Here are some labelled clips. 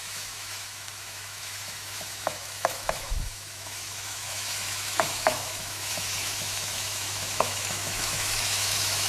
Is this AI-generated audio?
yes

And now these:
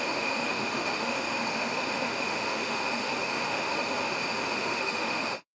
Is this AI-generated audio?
yes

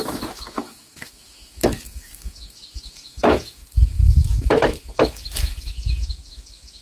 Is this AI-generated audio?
yes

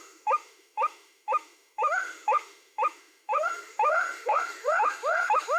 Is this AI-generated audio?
yes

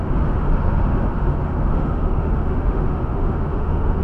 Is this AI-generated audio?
yes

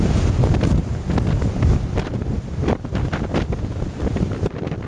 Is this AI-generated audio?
no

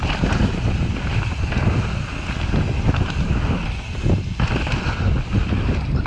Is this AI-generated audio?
no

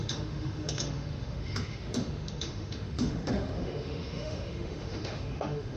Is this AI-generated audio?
yes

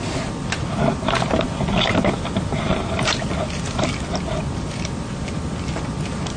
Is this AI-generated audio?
no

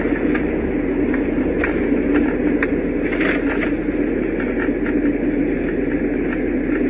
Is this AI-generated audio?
no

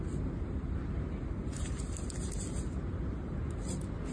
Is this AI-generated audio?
no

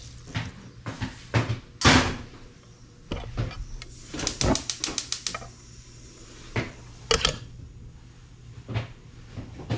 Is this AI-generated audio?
no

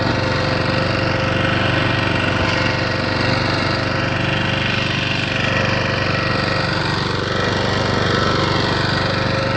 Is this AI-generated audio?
no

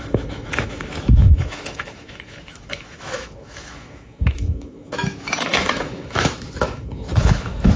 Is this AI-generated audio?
yes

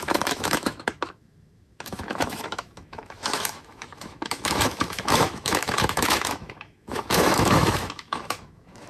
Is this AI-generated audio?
yes